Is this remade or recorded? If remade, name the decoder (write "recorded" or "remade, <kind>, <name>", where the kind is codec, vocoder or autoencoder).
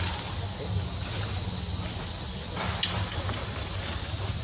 recorded